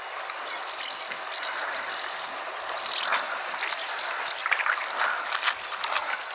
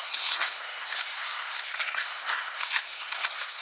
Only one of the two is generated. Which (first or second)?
second